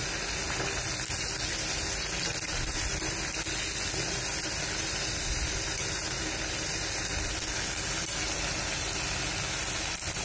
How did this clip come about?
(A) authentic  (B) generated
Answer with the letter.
A